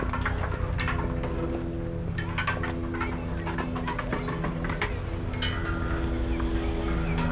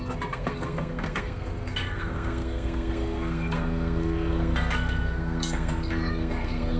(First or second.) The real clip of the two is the first